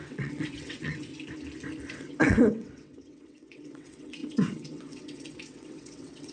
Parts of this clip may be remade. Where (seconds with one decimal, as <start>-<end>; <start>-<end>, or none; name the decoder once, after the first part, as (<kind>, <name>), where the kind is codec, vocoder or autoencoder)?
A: 0.0-1.1 (vocoder, WaveNeXt); 1.9-6.3